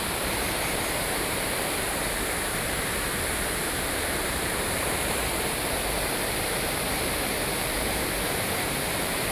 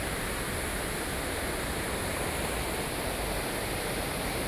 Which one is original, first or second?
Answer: second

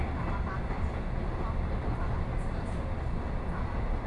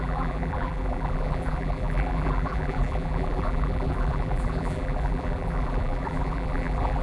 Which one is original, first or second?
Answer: first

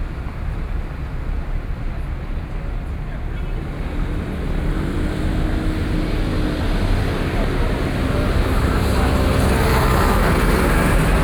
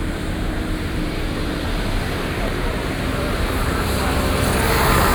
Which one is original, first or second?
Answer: first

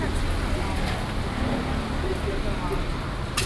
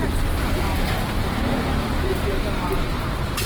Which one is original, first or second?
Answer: first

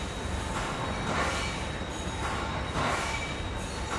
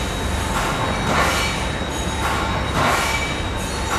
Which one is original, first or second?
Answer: second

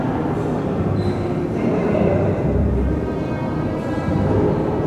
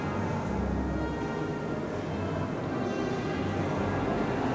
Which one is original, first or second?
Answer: second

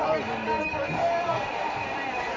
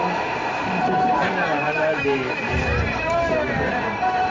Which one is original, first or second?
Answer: first